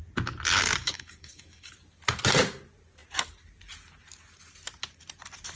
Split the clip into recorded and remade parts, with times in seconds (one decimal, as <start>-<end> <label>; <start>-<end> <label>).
0.0-0.8 recorded; 0.8-1.7 remade; 1.7-5.6 recorded